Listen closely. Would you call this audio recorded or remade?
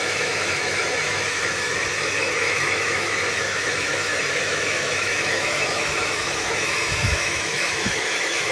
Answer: remade